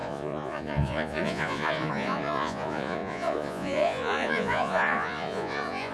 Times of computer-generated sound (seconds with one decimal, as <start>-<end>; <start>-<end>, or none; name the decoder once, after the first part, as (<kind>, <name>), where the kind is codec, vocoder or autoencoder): 0.0-5.9 (vocoder, Vocos)